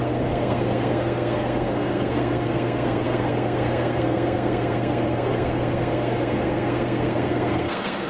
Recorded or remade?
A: remade